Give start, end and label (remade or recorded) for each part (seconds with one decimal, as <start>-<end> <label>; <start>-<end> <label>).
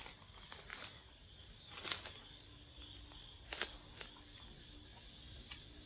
0.0-5.9 recorded